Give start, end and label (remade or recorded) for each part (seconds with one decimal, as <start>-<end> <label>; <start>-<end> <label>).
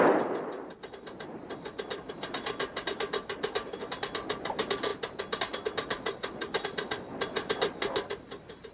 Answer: 0.0-8.7 recorded